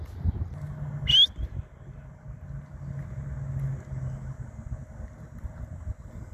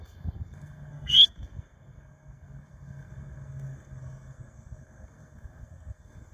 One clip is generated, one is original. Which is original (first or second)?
first